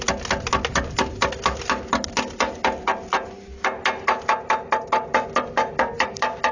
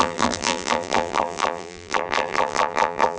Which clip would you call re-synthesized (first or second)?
second